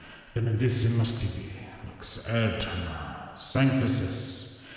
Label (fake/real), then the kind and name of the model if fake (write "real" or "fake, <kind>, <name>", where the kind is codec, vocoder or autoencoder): real